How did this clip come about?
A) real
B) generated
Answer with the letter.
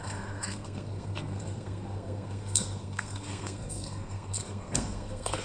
B